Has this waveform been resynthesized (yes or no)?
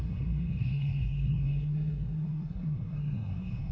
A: yes